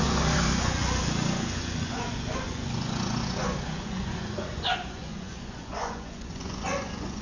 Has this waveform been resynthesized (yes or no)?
yes